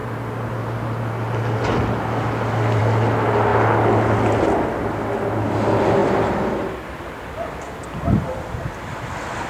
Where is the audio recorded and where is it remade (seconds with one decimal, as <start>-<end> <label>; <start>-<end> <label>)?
0.0-9.5 recorded